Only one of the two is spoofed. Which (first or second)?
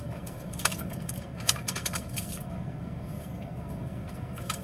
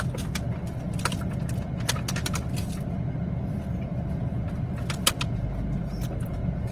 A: first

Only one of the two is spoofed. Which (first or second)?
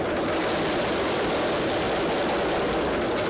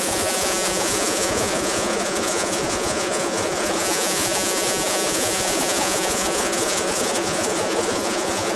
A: second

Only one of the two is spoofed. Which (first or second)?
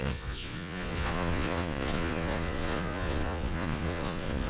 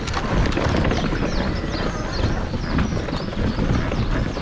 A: first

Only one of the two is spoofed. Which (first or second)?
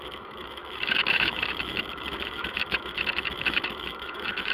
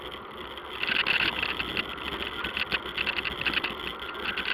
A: first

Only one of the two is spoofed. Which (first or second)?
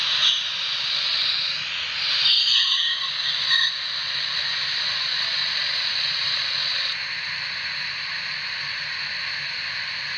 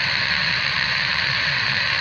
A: second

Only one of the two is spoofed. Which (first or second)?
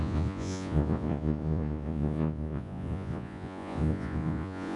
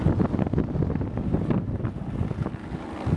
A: first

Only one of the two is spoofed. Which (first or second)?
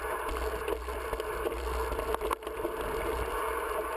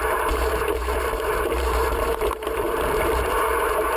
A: second